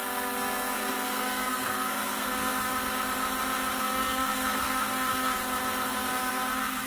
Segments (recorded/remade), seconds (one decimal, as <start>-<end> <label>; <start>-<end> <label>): 0.0-2.7 remade; 2.7-3.8 recorded; 3.8-5.4 remade; 5.4-5.9 recorded; 5.9-6.9 remade